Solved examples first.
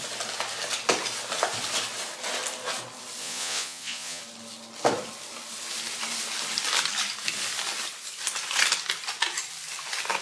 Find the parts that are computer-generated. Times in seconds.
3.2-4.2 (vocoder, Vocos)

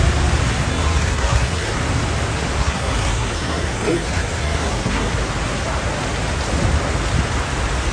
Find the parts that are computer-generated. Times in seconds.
0.7-1.8 (codec, SNAC); 2.6-5.1

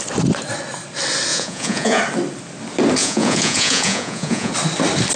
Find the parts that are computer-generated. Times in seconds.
1.3-2.0 (vocoder, Vocos); 3.0-4.5

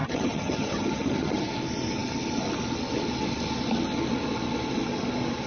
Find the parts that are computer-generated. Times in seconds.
0.0-1.5 (vocoder, HiFi-GAN)

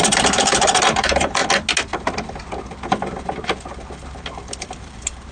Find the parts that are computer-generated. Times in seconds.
0.0-1.4 (vocoder, BigVGAN v2); 4.6-5.3

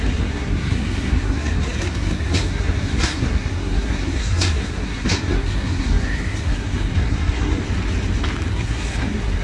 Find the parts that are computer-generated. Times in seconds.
0.0-7.6 (codec, SNAC); 8.5-9.4

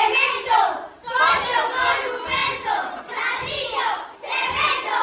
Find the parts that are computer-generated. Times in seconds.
none